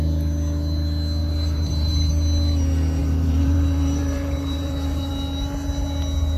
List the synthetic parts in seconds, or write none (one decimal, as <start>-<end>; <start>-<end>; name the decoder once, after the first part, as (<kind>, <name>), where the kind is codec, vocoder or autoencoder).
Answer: 1.2-2.1 (vocoder, BigVGAN v2); 3.0-5.1